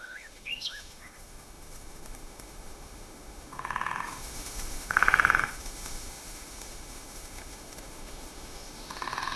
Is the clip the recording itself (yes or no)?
no